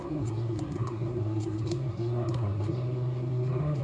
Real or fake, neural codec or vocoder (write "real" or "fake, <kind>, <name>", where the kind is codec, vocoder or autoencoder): fake, codec, SNAC